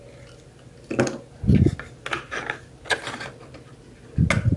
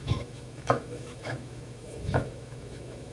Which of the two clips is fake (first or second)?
second